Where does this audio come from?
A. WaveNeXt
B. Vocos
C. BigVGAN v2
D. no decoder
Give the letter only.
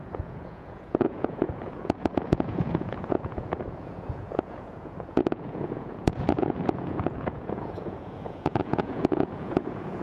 B